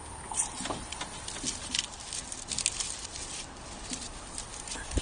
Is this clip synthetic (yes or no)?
no